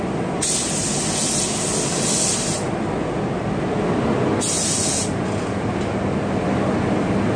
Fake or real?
real